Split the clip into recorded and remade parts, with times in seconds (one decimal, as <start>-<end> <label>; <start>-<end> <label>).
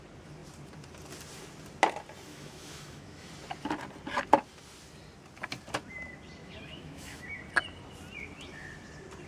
0.0-2.3 recorded; 2.3-3.3 remade; 3.3-6.4 recorded; 6.4-7.4 remade; 7.4-9.3 recorded